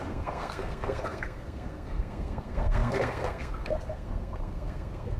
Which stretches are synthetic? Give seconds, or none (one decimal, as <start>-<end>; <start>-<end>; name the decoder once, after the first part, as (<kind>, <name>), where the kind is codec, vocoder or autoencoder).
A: 0.0-5.2 (codec, SNAC)